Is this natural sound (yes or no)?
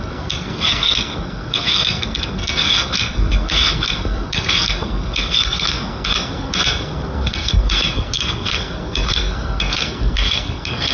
no